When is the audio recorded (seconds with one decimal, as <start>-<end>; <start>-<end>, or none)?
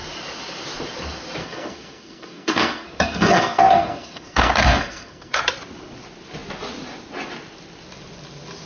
0.0-1.4; 5.4-8.7